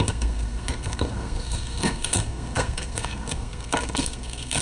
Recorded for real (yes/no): no